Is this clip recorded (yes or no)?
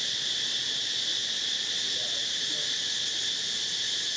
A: yes